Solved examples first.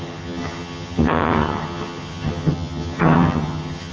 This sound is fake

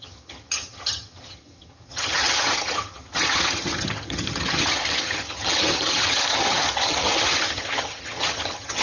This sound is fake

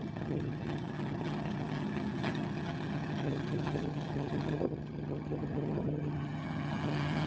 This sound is fake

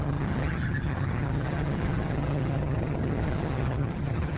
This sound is fake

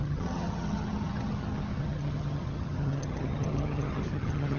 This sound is fake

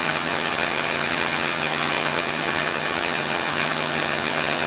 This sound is fake